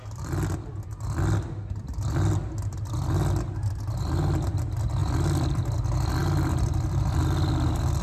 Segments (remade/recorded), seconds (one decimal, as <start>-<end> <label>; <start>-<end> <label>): 0.0-5.0 recorded; 5.0-5.6 remade; 5.6-6.2 recorded; 6.2-8.0 remade